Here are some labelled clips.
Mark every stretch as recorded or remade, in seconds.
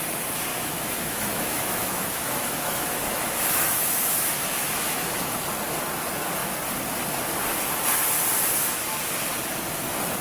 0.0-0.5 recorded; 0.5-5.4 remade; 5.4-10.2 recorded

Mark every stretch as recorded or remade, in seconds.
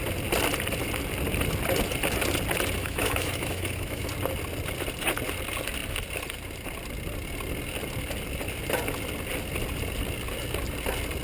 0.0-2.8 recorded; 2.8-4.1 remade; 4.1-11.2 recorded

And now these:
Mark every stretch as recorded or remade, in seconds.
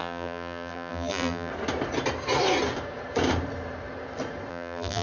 0.0-1.5 remade; 1.5-4.5 recorded; 4.5-5.0 remade